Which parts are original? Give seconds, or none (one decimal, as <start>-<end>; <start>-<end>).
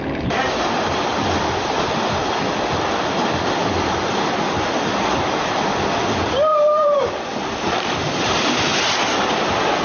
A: 0.0-6.5